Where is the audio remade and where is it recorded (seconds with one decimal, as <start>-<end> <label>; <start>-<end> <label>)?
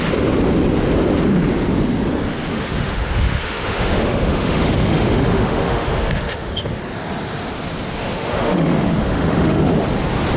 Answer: 0.0-2.5 recorded; 2.5-6.8 remade; 6.8-8.0 recorded; 8.0-9.7 remade; 9.7-10.4 recorded